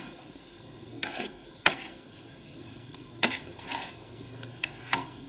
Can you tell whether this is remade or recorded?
remade